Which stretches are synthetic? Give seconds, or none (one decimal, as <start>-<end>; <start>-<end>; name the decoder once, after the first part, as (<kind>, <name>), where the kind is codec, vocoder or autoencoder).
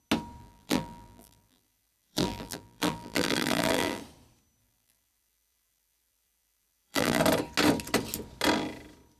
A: 0.4-4.0 (vocoder, BigVGAN v2); 4.6-7.2